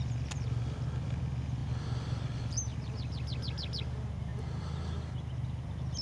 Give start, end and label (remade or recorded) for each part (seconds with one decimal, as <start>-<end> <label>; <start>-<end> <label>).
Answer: 0.0-6.0 recorded